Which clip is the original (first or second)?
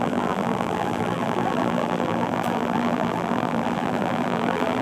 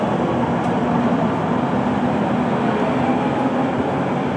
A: second